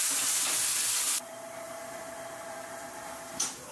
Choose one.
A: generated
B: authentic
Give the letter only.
A